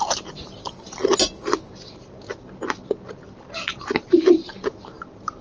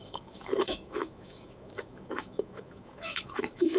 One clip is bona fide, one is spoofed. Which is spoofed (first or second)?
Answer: second